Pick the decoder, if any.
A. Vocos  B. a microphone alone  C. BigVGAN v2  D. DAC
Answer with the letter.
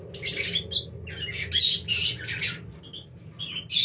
B